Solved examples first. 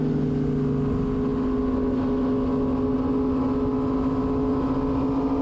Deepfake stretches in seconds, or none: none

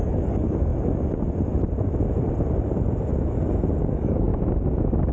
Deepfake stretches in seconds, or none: 0.0-0.7 (codec, DAC); 3.8-4.3

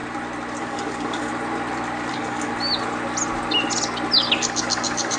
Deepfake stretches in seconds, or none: 0.6-1.3 (codec, DAC); 2.1-2.5; 4.3-5.2